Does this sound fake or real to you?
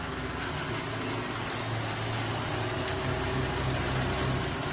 real